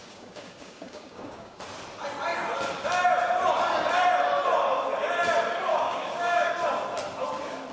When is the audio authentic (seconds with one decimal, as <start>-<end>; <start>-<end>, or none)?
1.6-5.7; 6.5-7.7